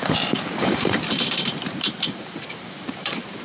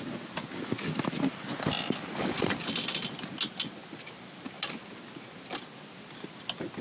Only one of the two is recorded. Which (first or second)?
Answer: second